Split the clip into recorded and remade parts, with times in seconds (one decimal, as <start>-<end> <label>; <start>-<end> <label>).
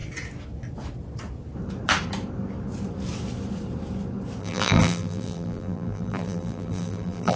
0.0-4.4 recorded; 4.4-7.4 remade